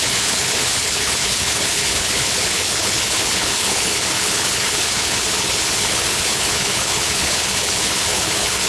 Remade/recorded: remade